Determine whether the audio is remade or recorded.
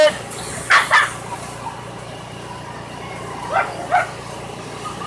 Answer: recorded